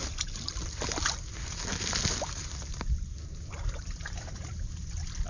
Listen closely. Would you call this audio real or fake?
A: real